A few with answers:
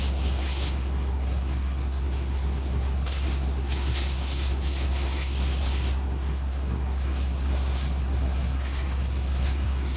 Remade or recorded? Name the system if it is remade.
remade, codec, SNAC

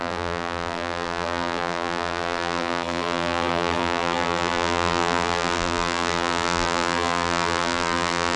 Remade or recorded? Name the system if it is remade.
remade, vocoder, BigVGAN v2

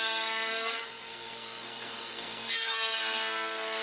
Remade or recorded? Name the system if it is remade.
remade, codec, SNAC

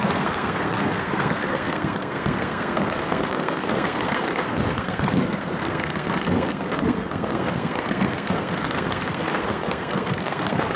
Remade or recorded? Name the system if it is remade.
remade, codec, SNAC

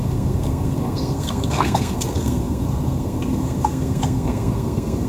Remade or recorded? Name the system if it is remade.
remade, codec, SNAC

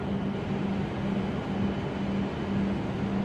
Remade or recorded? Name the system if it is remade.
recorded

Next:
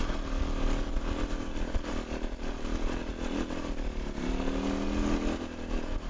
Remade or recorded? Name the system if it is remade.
recorded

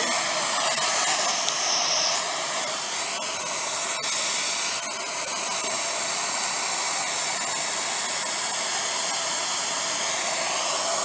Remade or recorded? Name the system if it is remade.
recorded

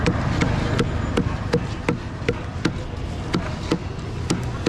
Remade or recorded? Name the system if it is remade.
recorded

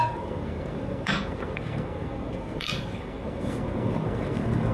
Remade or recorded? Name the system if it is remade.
remade, codec, SNAC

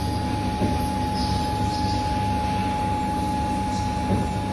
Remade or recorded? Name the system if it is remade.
recorded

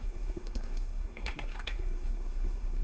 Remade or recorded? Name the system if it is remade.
remade, codec, SNAC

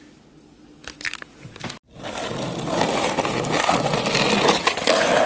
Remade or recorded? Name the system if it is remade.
recorded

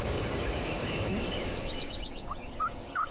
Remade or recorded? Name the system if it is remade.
remade, codec, DAC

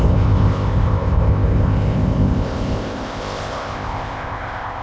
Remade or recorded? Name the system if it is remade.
remade, codec, ZipCodec